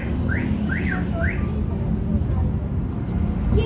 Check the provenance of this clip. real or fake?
real